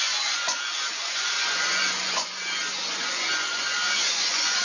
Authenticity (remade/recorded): remade